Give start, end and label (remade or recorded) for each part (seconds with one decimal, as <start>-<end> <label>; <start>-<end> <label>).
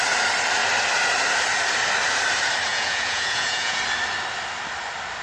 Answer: 0.0-2.7 recorded; 2.7-3.8 remade; 3.8-5.2 recorded